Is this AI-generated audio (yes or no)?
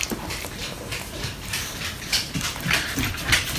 yes